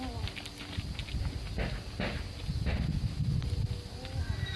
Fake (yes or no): no